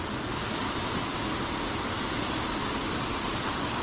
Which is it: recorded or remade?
recorded